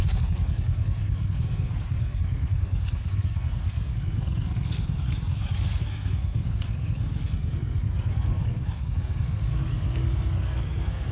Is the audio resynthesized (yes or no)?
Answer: yes